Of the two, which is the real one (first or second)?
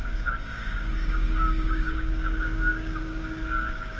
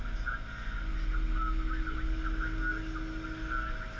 second